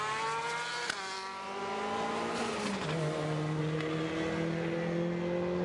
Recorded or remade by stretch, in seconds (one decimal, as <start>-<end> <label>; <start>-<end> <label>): 0.0-5.6 recorded